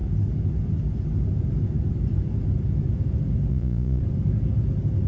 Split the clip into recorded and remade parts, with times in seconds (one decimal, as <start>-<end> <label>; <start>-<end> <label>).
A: 0.0-3.5 recorded; 3.5-4.0 remade; 4.0-5.1 recorded